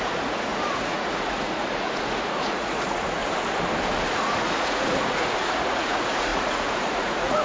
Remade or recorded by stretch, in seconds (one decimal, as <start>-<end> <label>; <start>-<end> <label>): 0.0-3.2 remade; 3.2-4.1 recorded; 4.1-7.4 remade